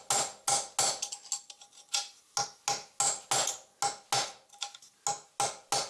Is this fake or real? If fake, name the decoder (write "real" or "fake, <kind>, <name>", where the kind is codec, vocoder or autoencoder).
real